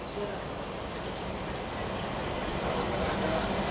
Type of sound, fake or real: real